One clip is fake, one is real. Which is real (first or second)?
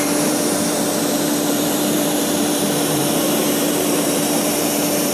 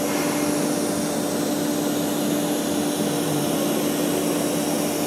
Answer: second